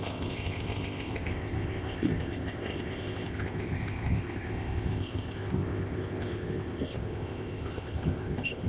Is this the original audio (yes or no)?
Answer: no